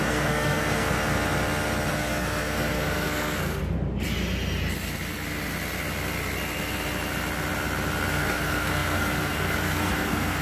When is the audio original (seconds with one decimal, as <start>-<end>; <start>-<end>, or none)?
0.9-1.9; 3.6-8.1